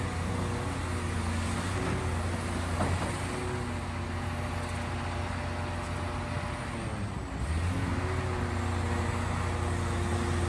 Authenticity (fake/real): real